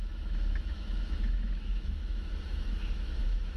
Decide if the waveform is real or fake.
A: fake